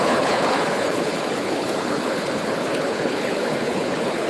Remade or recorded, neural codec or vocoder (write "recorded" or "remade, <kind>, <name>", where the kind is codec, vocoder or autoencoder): remade, codec, HILCodec